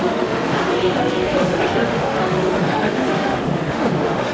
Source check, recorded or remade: remade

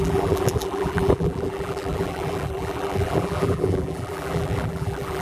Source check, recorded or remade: remade